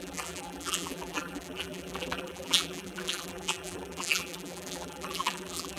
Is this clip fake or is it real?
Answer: fake